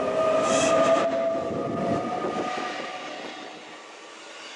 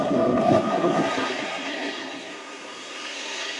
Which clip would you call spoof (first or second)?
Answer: second